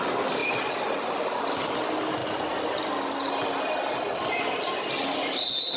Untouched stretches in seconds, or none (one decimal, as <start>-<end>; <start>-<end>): 0.0-5.8